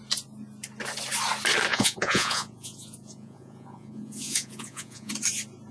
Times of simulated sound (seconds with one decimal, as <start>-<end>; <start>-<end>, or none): 1.7-5.1